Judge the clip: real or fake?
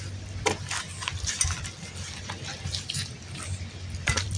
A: fake